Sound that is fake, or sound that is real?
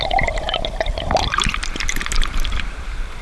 fake